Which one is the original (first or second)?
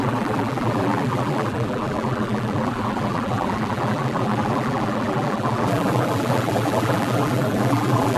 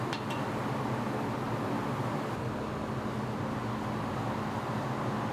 second